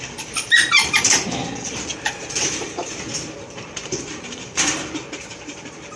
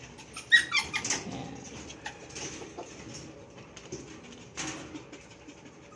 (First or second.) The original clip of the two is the second